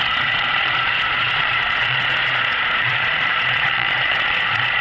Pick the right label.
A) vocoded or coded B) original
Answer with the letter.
A